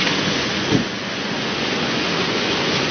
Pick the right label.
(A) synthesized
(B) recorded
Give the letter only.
A